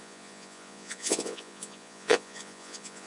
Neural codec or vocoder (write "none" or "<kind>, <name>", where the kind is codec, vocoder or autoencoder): vocoder, Vocos